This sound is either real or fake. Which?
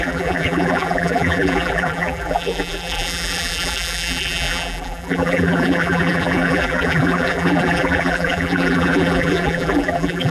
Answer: fake